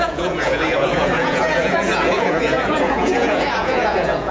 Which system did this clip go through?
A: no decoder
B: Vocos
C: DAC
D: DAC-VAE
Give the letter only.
B